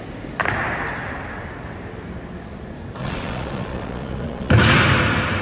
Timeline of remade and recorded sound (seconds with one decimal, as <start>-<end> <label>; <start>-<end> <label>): 0.0-3.0 recorded; 3.0-4.5 remade; 4.5-5.4 recorded